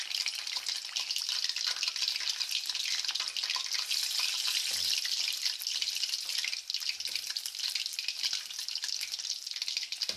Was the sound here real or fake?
real